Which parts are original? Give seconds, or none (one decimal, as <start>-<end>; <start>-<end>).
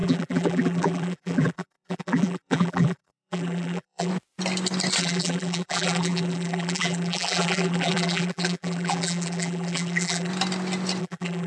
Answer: 4.1-5.0; 10.3-11.0